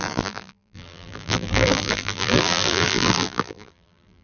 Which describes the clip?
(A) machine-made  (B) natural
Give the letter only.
A